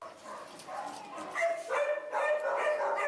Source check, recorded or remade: recorded